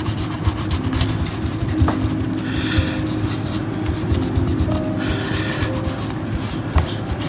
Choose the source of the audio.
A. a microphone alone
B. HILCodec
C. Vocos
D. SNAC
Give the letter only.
A